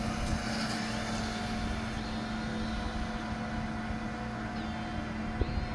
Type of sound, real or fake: real